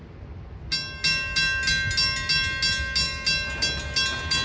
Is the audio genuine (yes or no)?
yes